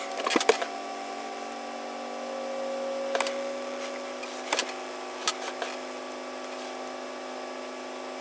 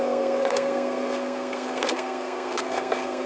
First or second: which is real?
first